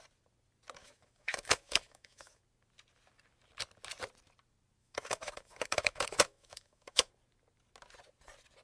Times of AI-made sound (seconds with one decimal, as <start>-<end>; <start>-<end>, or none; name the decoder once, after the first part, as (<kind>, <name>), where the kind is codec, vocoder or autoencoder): 0.8-2.4 (autoencoder, DAC-VAE); 4.8-7.1